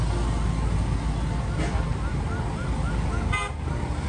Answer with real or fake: real